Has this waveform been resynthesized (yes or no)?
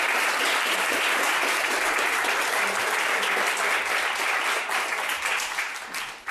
no